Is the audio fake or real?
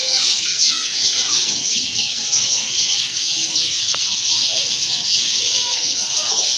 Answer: fake